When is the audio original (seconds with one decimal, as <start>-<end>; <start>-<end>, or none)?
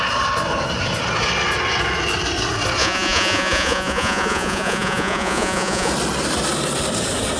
0.0-2.8; 5.9-7.4